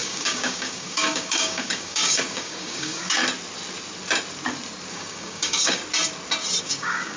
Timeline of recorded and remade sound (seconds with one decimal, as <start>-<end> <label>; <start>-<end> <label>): 0.0-3.2 remade; 3.2-4.9 recorded; 4.9-5.8 remade; 5.8-6.6 recorded; 6.6-7.2 remade